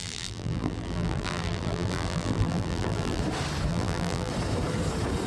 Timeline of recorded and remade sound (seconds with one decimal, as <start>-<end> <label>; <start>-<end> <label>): 0.0-3.2 remade; 3.2-3.7 recorded; 3.7-4.3 remade; 4.3-5.3 recorded